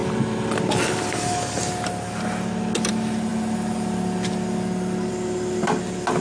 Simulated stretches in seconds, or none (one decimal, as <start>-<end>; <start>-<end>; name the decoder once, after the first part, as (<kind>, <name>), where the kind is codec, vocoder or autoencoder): none